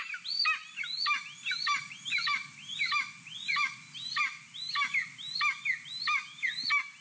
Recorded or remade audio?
recorded